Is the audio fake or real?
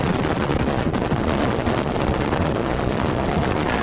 fake